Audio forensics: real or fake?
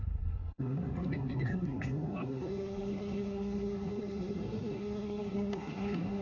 fake